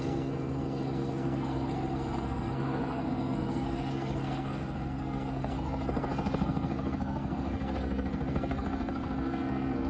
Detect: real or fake fake